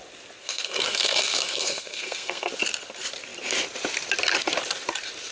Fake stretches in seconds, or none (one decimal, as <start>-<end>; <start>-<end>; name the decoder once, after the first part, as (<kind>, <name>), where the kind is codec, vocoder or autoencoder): 0.4-2.5 (codec, SNAC)